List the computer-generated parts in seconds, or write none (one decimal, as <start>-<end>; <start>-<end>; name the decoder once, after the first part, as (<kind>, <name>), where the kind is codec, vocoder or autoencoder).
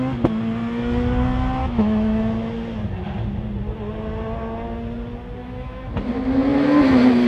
1.6-2.2 (autoencoder, DAC-VAE); 5.4-5.9